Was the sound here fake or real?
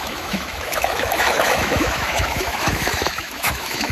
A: fake